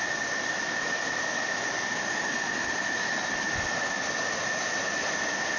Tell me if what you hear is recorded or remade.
recorded